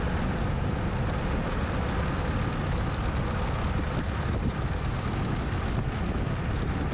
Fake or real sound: real